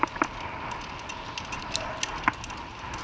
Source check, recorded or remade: recorded